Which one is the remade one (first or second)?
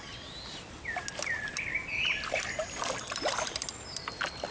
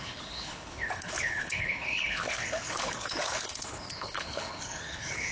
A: second